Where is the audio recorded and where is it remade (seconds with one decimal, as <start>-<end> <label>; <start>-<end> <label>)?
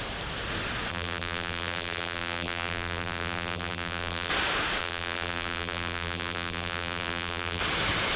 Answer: 0.0-0.9 recorded; 0.9-4.3 remade; 4.3-4.8 recorded; 4.8-7.6 remade; 7.6-8.2 recorded